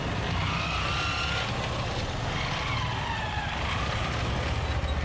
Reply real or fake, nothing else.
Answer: real